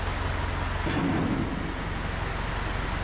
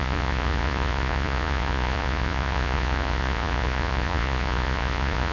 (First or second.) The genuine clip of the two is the first